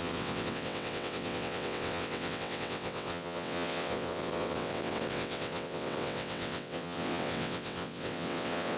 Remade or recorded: remade